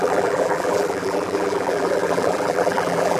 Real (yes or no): no